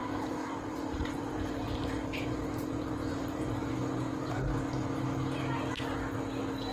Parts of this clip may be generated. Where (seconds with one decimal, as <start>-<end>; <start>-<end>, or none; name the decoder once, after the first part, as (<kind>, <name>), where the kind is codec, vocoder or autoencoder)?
0.0-3.7 (vocoder, BigVGAN v2)

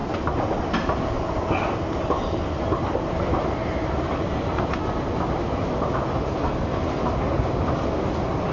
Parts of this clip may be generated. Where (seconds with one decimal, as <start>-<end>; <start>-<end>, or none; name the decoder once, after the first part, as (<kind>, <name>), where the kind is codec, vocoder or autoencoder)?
3.6-4.7 (vocoder, BigVGAN v2)